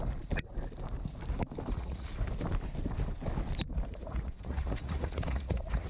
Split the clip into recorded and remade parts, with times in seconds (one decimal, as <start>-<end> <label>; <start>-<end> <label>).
0.0-1.7 recorded; 1.7-2.1 remade; 2.1-3.9 recorded; 3.9-5.9 remade